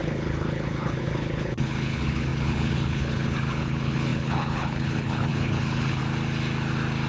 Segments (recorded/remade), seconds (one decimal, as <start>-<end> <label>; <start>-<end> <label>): 0.0-6.0 remade; 6.0-7.1 recorded